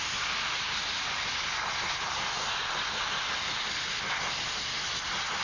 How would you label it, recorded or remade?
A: recorded